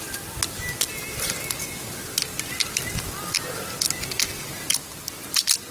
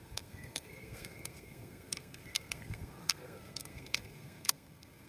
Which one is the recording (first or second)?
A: first